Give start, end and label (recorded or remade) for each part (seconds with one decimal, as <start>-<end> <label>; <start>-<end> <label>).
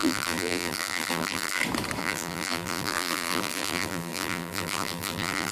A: 0.0-1.6 remade; 1.6-2.0 recorded; 2.0-5.5 remade